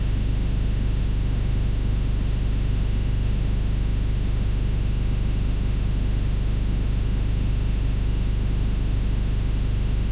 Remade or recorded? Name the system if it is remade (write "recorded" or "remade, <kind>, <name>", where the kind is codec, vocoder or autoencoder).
remade, autoencoder, DAC-VAE